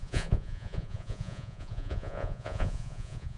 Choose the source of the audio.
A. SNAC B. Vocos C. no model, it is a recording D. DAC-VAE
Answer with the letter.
B